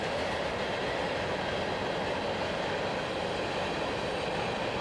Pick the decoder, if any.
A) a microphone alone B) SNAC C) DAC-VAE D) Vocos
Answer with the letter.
A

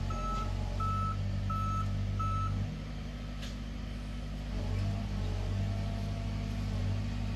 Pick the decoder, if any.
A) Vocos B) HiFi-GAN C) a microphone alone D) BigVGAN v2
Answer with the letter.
C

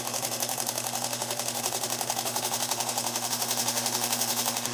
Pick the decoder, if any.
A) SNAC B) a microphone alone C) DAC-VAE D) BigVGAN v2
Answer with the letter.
C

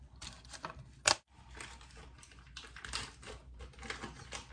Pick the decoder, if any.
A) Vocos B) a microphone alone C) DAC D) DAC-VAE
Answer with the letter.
B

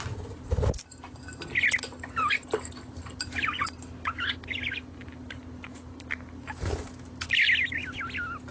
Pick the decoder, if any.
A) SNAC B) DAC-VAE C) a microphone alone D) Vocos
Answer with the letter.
C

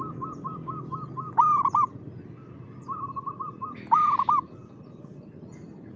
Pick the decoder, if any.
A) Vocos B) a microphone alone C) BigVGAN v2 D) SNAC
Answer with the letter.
B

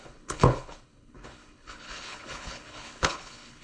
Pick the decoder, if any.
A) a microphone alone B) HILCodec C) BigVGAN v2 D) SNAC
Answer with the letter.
B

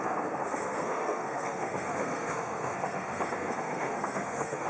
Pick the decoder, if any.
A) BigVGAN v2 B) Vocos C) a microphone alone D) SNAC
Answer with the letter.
D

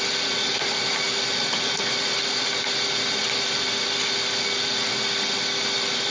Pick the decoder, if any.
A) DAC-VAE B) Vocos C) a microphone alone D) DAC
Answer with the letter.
C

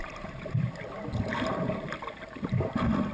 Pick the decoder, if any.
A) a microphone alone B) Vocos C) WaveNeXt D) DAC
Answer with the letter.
A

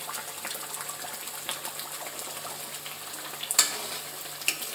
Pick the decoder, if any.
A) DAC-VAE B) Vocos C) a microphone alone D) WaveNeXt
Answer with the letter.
C